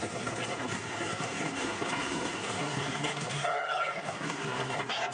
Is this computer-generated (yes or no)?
yes